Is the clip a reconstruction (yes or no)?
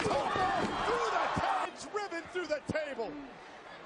no